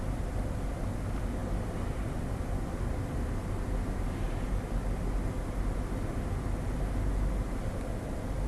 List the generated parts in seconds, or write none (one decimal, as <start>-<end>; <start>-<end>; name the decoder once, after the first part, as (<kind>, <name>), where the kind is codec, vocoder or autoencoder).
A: none

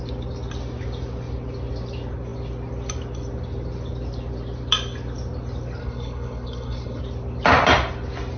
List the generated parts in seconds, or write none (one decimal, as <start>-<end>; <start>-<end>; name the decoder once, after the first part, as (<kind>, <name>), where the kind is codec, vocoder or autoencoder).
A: 5.8-7.0 (codec, HILCodec)

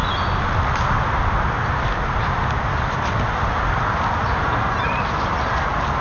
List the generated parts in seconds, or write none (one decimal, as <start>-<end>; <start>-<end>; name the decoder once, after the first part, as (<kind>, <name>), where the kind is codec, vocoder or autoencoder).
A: none

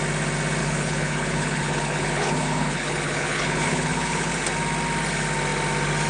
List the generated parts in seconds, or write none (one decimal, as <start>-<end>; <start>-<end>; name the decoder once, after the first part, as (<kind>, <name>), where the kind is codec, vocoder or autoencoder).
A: 0.6-4.3 (codec, HILCodec)